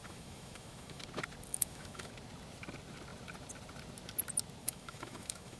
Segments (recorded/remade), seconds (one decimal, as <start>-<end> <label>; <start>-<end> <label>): 0.0-1.0 remade; 1.0-1.5 recorded; 1.5-2.1 remade; 2.1-4.6 recorded; 4.6-5.6 remade